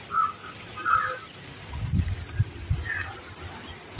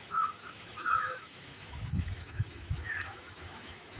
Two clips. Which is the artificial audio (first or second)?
second